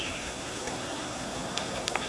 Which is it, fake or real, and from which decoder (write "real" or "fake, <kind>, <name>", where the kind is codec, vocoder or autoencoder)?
fake, codec, SNAC